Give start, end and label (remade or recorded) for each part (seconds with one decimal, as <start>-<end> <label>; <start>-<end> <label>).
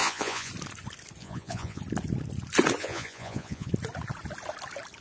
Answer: 0.0-0.5 remade; 0.5-1.2 recorded; 1.2-1.8 remade; 1.8-2.8 recorded; 2.8-3.7 remade; 3.7-5.0 recorded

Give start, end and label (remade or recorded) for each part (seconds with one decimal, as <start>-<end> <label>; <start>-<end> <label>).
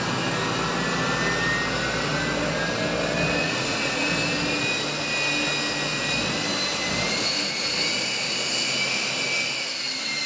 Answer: 0.0-3.4 recorded; 3.4-4.1 remade; 4.1-10.3 recorded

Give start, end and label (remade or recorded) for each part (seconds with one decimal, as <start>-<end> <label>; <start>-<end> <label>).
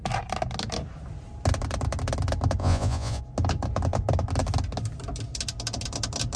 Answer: 0.0-2.6 recorded; 2.6-3.2 remade; 3.2-6.4 recorded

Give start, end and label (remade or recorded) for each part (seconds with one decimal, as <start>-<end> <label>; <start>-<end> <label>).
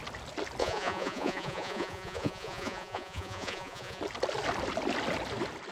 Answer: 0.0-0.6 recorded; 0.6-4.0 remade; 4.0-5.7 recorded